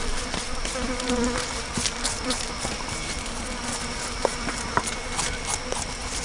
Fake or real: fake